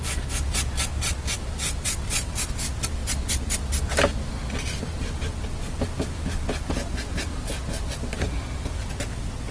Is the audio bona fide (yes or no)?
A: yes